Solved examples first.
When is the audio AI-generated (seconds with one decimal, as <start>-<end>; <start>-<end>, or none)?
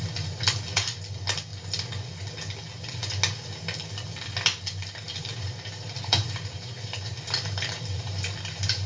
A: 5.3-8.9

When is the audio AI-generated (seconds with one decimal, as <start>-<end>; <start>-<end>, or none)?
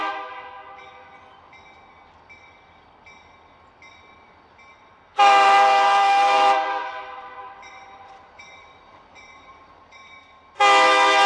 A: 0.0-0.8; 4.7-9.8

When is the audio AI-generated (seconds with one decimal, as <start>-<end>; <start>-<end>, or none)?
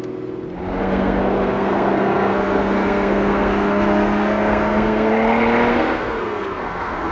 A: 0.8-5.1; 5.7-7.1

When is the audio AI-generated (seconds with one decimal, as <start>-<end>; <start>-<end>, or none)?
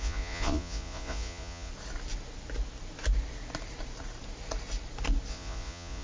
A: 0.0-1.7; 5.3-6.0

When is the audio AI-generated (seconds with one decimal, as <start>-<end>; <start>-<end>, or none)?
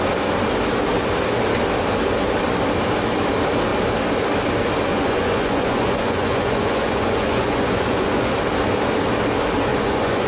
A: 4.9-8.3; 9.7-10.3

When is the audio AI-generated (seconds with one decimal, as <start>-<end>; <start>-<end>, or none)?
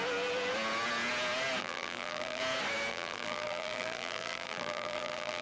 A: 1.6-2.4; 2.9-5.4